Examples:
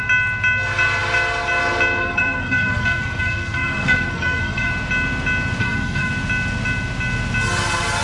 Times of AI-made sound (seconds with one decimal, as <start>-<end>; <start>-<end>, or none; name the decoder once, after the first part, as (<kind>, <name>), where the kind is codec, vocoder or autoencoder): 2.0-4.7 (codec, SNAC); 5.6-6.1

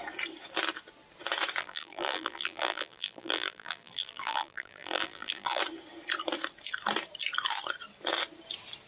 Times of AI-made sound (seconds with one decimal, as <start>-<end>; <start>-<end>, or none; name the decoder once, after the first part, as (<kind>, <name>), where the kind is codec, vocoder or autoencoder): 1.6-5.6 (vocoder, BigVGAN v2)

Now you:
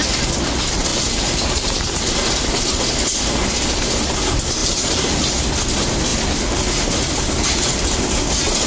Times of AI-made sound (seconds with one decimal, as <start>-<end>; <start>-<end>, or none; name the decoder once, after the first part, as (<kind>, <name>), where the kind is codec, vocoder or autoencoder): 0.9-2.1 (vocoder, BigVGAN v2); 4.6-5.4; 6.1-7.8

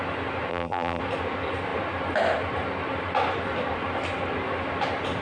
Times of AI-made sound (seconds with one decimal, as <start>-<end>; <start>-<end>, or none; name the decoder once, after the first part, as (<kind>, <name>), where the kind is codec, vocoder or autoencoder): 0.5-1.0 (vocoder, BigVGAN v2)

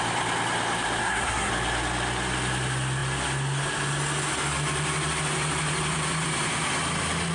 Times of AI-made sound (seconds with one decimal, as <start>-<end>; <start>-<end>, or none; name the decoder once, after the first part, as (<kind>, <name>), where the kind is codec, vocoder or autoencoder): 1.0-1.5 (codec, SNAC)